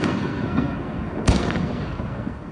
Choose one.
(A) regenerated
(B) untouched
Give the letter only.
A